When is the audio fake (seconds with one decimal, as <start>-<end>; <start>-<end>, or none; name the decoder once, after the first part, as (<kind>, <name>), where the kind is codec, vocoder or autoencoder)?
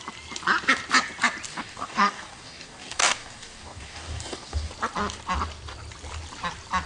1.5-4.7 (codec, DAC)